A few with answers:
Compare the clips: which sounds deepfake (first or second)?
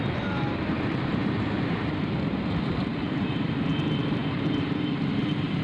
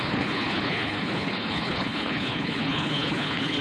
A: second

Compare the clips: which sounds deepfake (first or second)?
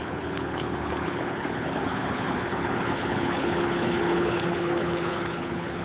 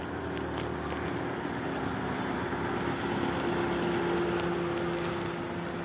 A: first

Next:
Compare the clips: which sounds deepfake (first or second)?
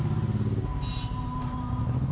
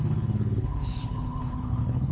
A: second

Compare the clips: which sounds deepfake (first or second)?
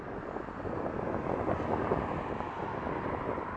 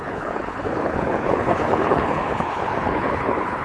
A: second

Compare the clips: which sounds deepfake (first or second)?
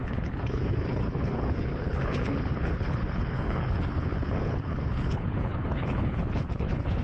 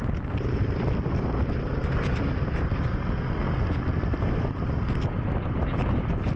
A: first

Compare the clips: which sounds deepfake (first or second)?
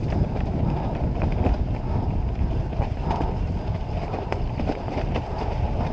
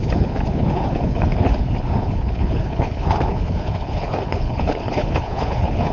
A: second